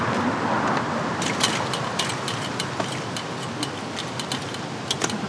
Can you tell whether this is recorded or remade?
recorded